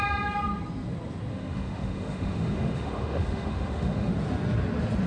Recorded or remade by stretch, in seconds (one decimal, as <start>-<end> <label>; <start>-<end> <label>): 0.0-1.3 recorded; 1.3-4.1 remade; 4.1-5.1 recorded